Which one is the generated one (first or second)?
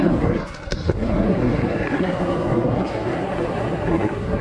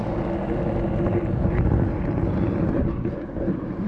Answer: first